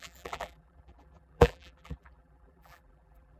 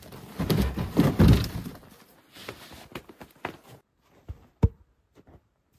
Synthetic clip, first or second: first